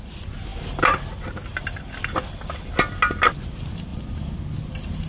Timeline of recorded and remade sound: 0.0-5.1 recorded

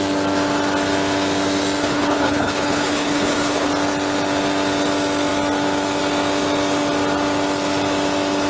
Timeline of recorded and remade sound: 0.0-1.8 recorded; 1.8-3.7 remade; 3.7-8.5 recorded